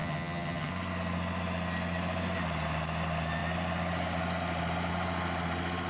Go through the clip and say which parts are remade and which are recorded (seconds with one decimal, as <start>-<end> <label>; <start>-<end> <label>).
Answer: 0.0-0.7 remade; 0.7-5.9 recorded

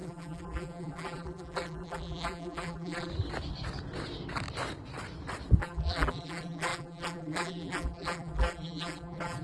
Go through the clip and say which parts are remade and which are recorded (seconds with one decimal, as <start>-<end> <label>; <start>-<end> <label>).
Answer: 0.0-3.1 remade; 3.1-5.6 recorded; 5.6-9.4 remade

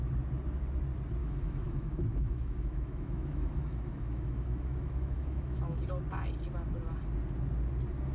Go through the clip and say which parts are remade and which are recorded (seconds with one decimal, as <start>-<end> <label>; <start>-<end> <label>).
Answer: 0.0-1.2 recorded; 1.2-5.8 remade; 5.8-8.1 recorded

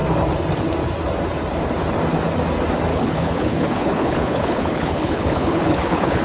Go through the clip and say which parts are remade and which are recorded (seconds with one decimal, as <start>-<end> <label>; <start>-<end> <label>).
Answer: 0.0-2.9 recorded; 2.9-6.2 remade

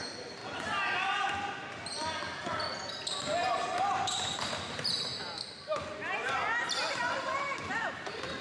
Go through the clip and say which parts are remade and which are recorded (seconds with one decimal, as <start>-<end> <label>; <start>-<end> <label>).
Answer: 0.0-0.4 remade; 0.4-3.8 recorded; 3.8-5.1 remade; 5.1-6.9 recorded; 6.9-8.4 remade